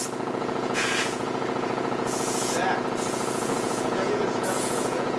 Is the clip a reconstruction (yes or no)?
yes